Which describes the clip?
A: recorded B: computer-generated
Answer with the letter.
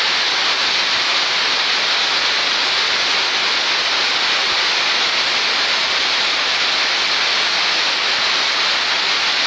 A